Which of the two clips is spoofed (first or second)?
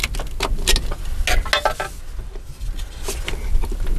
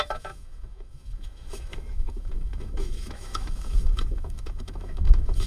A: second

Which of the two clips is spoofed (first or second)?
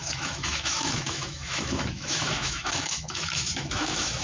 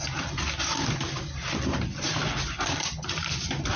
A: first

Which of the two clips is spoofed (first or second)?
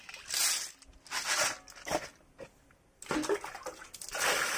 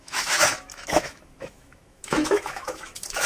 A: second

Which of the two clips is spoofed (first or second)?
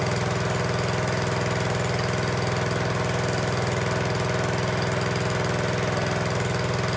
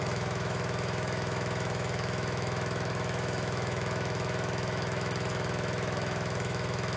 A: second